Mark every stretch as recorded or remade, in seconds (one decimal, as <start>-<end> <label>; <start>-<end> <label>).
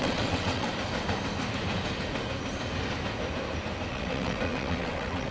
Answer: 0.0-0.7 remade; 0.7-3.9 recorded; 3.9-5.3 remade